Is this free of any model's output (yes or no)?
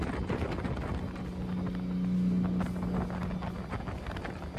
yes